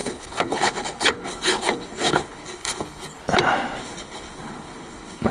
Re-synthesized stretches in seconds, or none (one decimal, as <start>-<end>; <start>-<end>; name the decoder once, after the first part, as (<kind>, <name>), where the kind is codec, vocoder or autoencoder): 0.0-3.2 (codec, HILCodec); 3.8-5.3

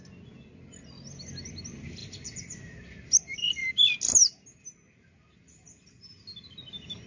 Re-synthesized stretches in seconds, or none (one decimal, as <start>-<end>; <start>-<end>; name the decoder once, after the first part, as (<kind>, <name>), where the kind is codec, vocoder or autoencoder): none

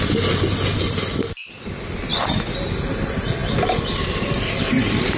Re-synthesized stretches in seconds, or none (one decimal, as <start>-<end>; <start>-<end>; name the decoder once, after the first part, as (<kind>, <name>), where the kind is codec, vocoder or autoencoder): none

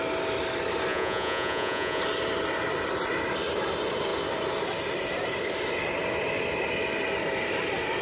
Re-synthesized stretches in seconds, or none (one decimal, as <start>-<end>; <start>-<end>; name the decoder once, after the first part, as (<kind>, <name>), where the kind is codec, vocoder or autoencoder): 0.9-2.0 (vocoder, Vocos)

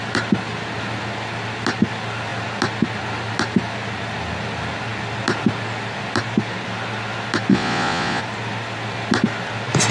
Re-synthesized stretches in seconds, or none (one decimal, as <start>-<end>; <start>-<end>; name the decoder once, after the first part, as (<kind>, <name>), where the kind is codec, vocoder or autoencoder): 7.5-8.2 (vocoder, Vocos)

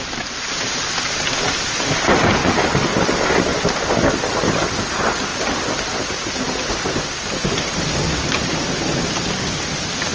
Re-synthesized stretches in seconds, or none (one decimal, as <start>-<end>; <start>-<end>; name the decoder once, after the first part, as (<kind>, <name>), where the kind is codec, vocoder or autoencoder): none